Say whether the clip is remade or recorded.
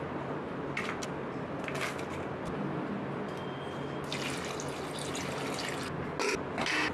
recorded